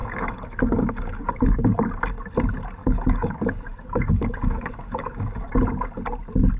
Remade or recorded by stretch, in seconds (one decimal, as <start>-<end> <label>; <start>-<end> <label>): 0.0-1.8 remade; 1.8-2.8 recorded; 2.8-5.5 remade; 5.5-6.6 recorded